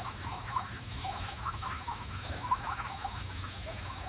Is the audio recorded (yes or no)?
no